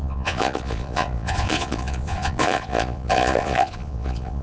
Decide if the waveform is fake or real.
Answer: fake